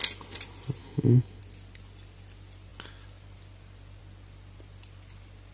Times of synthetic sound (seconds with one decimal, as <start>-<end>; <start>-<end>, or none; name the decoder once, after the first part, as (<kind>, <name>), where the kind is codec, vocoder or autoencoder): 0.8-1.4 (autoencoder, DAC-VAE)